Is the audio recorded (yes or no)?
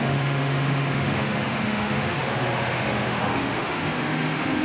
no